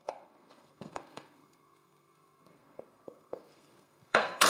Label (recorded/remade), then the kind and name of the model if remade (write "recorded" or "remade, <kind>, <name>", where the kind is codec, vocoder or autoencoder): remade, codec, SNAC